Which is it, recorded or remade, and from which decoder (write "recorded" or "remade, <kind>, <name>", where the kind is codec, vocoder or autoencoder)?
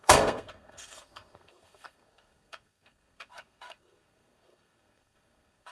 remade, codec, SNAC